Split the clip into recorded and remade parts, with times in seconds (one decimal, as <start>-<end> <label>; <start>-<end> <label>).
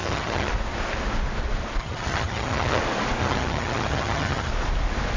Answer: 0.0-0.5 remade; 0.5-1.8 recorded; 1.8-2.8 remade; 2.8-3.2 recorded; 3.2-4.5 remade; 4.5-5.2 recorded